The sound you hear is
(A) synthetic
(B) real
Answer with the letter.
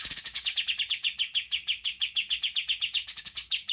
A